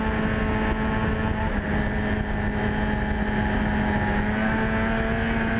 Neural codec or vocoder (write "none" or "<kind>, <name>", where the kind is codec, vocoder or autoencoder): none